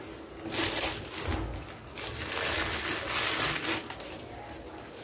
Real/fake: real